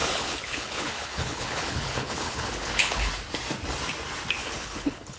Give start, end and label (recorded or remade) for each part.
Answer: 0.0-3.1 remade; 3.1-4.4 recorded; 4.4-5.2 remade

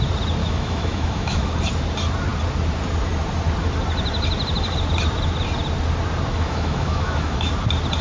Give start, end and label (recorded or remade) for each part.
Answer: 0.0-0.4 recorded; 0.4-1.5 remade; 1.5-6.3 recorded; 6.3-7.5 remade; 7.5-8.0 recorded

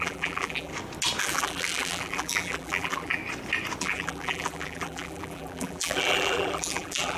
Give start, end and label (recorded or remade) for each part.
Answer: 0.0-0.7 remade; 0.7-1.2 recorded; 1.2-3.2 remade; 3.2-3.8 recorded; 3.8-7.2 remade